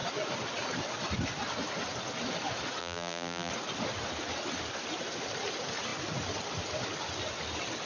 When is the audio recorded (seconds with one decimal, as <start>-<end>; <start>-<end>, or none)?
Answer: 0.0-2.8; 3.5-7.9